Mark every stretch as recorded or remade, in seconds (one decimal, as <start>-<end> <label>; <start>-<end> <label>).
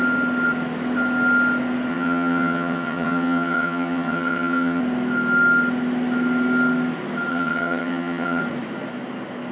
0.0-1.9 recorded; 1.9-4.8 remade; 4.8-7.3 recorded; 7.3-8.4 remade; 8.4-9.5 recorded